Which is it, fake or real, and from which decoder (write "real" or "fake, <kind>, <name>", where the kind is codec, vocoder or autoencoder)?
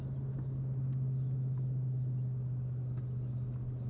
real